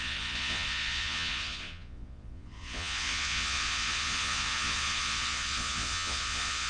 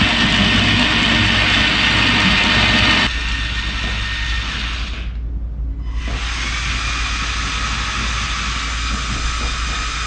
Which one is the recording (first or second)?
second